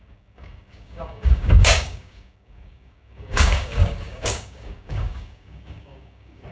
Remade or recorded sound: remade